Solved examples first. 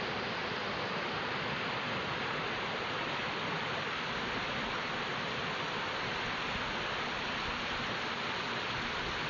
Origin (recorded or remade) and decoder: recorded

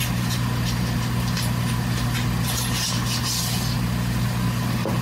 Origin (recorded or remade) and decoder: recorded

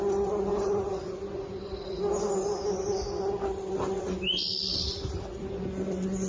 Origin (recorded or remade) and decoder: recorded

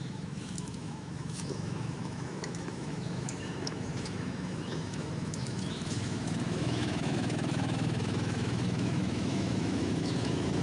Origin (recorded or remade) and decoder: remade, autoencoder, DAC-VAE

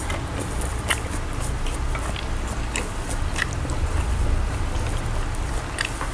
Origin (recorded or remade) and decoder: recorded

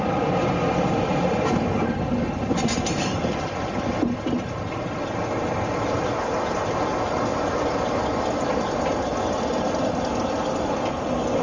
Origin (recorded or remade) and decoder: remade, vocoder, BigVGAN v2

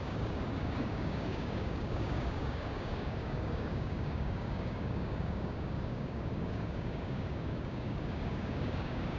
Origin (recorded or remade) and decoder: remade, codec, DAC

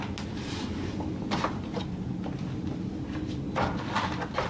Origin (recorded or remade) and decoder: recorded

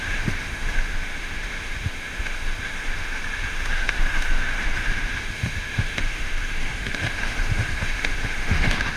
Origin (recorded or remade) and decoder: remade, autoencoder, DAC-VAE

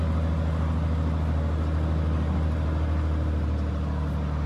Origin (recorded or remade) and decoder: recorded